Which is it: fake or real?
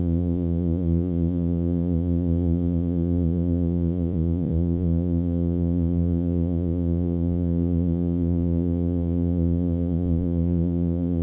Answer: fake